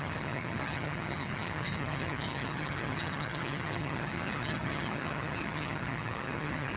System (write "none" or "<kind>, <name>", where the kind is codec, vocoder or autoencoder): vocoder, HiFi-GAN